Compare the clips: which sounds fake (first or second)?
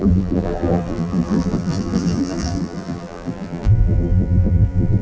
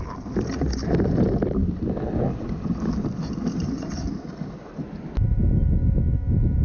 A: first